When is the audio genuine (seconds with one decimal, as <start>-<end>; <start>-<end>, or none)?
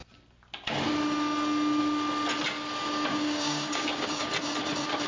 0.0-3.1; 4.3-5.1